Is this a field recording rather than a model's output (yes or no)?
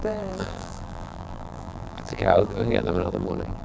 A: no